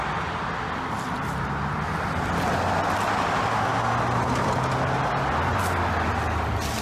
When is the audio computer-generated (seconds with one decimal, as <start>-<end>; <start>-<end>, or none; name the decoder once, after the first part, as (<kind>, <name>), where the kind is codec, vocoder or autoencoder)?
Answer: none